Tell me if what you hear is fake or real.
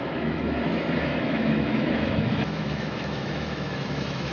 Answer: fake